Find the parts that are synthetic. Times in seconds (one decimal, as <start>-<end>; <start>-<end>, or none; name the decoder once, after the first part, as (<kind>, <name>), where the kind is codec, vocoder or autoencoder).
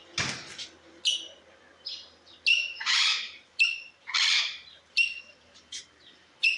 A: 2.5-6.6 (vocoder, BigVGAN v2)